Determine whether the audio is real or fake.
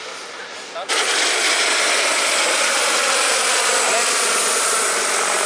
real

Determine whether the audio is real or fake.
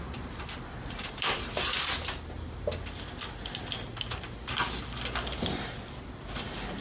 real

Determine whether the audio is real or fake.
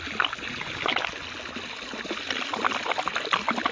real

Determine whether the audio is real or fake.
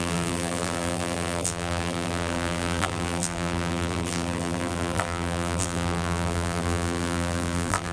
fake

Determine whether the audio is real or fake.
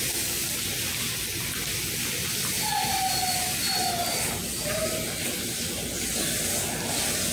real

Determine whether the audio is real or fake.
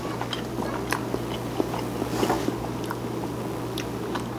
real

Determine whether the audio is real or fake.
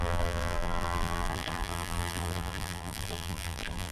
fake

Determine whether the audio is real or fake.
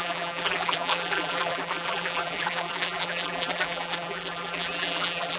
fake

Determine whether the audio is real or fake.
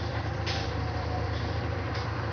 fake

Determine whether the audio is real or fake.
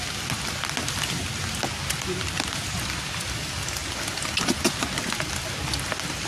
real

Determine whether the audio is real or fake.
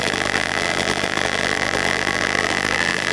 fake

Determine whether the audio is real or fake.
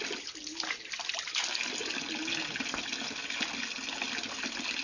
real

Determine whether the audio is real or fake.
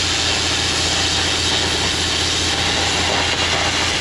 real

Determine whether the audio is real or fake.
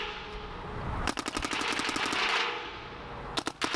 real